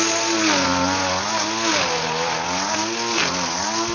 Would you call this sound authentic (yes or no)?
yes